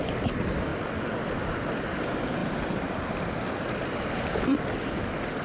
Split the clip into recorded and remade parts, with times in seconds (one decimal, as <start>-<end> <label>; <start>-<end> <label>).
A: 0.0-5.4 recorded